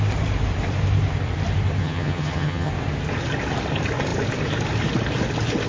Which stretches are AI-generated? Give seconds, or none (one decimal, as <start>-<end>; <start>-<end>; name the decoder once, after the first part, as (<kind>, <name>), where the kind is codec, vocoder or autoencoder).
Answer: 1.8-2.7 (vocoder, HiFi-GAN)